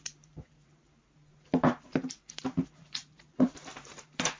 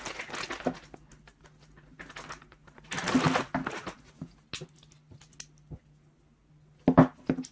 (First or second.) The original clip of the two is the second